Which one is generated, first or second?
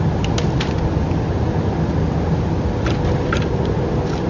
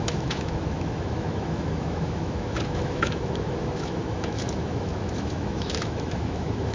second